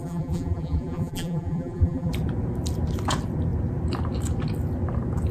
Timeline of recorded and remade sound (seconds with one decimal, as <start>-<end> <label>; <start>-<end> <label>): 0.0-2.1 remade; 2.1-5.3 recorded